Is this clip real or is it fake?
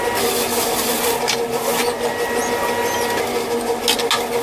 real